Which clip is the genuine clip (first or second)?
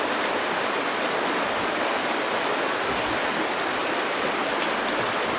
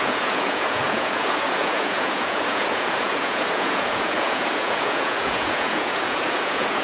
first